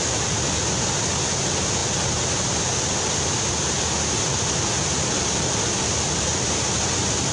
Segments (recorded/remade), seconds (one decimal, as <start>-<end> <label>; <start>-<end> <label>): 0.0-7.3 recorded